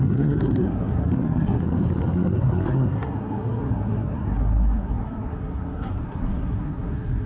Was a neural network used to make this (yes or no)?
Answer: yes